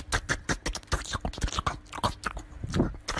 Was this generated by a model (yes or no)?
no